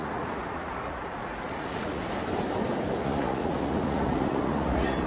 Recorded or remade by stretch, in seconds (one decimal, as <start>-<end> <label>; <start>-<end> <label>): 0.0-2.0 remade; 2.0-3.0 recorded; 3.0-5.1 remade